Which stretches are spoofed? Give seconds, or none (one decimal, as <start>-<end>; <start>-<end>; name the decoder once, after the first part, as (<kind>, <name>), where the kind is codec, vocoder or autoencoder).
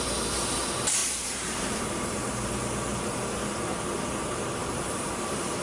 1.0-2.5 (vocoder, BigVGAN v2); 4.6-5.6